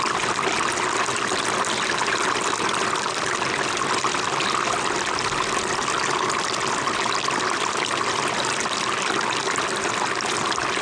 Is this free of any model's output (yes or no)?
yes